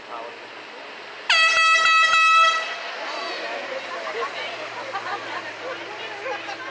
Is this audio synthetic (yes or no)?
no